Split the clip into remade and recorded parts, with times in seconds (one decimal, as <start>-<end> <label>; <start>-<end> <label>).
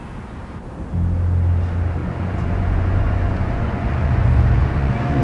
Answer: 0.0-2.0 recorded; 2.0-5.2 remade